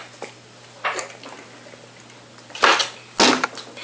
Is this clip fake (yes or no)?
no